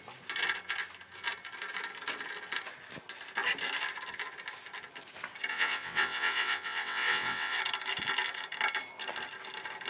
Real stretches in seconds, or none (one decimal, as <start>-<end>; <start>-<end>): 0.0-5.5; 7.6-9.9

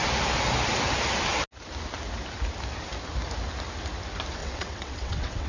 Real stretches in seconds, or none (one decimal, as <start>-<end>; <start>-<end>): 0.0-4.4

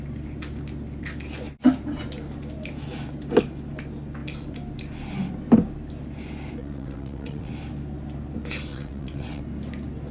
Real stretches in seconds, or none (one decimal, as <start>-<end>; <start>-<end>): 0.0-6.6; 7.5-8.7; 9.4-10.1

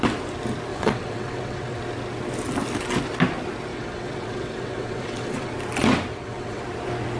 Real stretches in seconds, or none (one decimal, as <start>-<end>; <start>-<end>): 0.0-0.7; 1.8-3.7; 5.5-6.1; 6.6-7.2

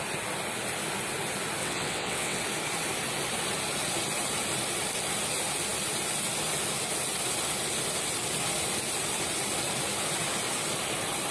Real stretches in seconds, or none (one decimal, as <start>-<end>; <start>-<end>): 0.0-1.6; 2.4-11.3